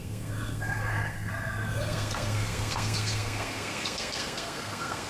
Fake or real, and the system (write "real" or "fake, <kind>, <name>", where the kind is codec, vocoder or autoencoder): fake, codec, SNAC